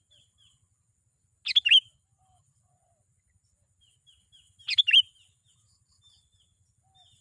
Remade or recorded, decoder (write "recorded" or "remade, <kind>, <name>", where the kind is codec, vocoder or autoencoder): recorded